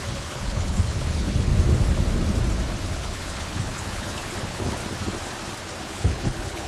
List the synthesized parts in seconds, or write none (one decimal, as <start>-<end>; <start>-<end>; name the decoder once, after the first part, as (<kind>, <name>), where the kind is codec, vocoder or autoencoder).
0.0-1.5 (codec, HILCodec); 2.8-4.8; 5.8-6.7